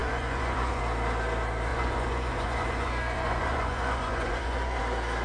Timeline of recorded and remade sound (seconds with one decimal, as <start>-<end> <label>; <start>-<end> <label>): 0.0-0.8 remade; 0.8-1.7 recorded; 1.7-4.8 remade; 4.8-5.2 recorded